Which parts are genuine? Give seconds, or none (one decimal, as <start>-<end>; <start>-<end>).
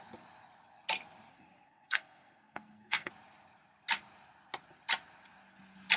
0.0-1.3; 3.1-6.0